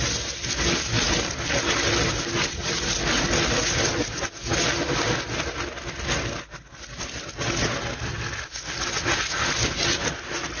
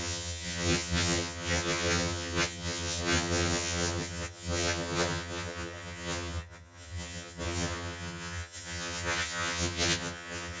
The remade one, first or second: second